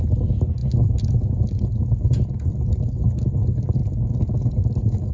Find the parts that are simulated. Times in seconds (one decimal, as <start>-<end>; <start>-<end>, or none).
none